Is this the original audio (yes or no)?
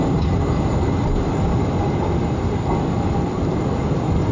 yes